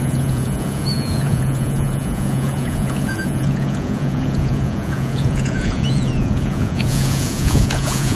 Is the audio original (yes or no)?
no